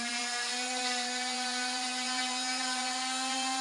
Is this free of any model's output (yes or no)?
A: no